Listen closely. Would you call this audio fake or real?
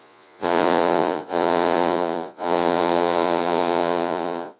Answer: fake